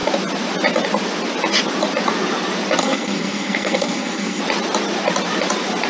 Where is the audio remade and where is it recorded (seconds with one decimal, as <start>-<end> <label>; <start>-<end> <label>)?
0.0-2.8 recorded; 2.8-4.4 remade; 4.4-5.9 recorded